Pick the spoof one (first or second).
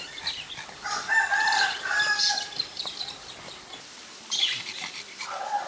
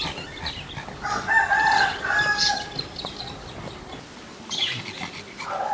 first